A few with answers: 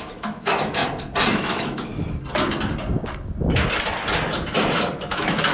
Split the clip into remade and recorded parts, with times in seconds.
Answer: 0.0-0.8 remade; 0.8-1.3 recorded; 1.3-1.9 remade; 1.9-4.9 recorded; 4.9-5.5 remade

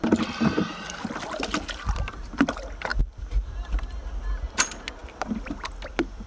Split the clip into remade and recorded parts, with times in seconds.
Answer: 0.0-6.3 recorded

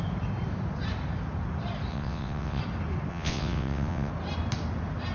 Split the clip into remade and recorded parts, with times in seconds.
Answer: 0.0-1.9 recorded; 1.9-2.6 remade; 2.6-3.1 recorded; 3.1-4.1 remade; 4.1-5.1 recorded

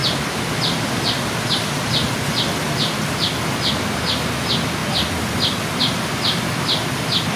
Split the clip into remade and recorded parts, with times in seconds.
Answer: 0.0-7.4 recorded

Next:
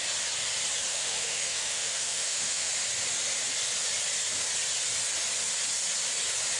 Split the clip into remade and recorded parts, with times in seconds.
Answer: 0.0-0.9 recorded; 0.9-2.7 remade; 2.7-6.6 recorded

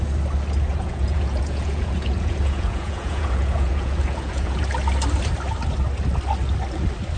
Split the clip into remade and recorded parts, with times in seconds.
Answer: 0.0-0.7 recorded; 0.7-4.6 remade; 4.6-7.2 recorded